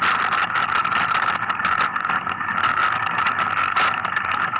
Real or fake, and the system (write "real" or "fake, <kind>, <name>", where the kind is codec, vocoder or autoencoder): real